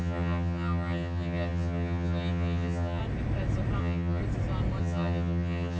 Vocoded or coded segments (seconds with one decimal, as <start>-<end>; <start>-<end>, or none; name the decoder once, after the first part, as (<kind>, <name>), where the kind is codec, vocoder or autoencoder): 0.0-3.0 (vocoder, HiFi-GAN); 3.8-4.2; 4.8-5.8